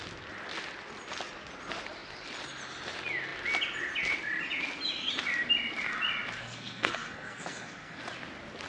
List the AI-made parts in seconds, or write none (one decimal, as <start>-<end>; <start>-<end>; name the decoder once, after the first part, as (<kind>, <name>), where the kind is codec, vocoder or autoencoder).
6.4-8.0 (codec, SNAC)